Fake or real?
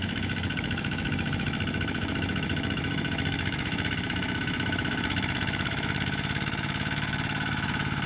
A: fake